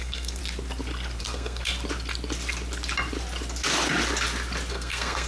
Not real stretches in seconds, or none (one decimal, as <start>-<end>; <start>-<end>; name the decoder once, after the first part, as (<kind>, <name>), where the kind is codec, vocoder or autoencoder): 0.0-0.4 (codec, SNAC); 1.2-1.7; 4.7-5.3